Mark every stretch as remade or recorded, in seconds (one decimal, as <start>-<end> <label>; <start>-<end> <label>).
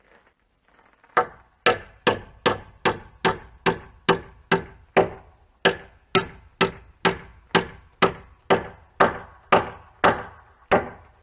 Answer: 0.0-11.2 recorded